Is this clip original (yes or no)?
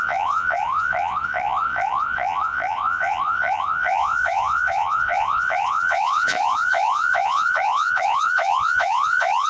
no